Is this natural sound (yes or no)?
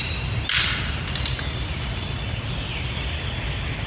yes